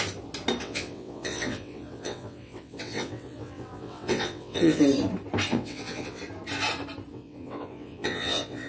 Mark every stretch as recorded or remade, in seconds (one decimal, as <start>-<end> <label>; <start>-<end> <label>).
0.0-0.6 recorded; 0.6-4.8 remade; 4.8-5.5 recorded; 5.5-6.2 remade; 6.2-7.1 recorded; 7.1-8.7 remade

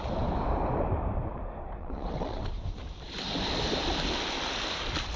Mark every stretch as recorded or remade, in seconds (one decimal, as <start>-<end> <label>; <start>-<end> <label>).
0.0-1.8 recorded; 1.8-2.5 remade; 2.5-5.2 recorded

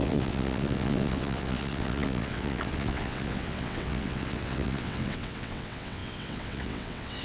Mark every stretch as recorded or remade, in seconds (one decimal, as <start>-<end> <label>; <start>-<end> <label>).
0.0-7.2 remade

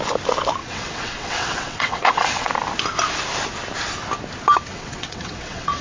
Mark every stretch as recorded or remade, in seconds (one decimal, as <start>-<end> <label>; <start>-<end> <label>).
0.0-0.6 recorded; 0.6-2.5 remade; 2.5-4.7 recorded; 4.7-5.8 remade

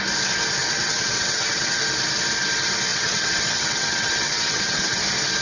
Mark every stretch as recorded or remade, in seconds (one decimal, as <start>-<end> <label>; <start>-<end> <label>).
0.0-0.6 recorded; 0.6-1.8 remade; 1.8-2.9 recorded; 2.9-5.0 remade; 5.0-5.4 recorded